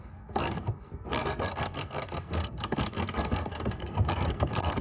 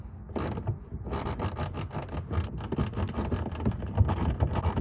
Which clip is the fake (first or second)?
first